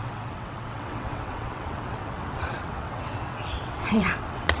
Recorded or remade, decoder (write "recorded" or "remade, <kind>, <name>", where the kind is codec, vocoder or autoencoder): remade, vocoder, WaveNeXt